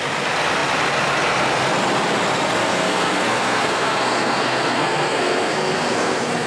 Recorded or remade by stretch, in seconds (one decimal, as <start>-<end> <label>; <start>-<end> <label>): 0.0-2.6 recorded; 2.6-6.5 remade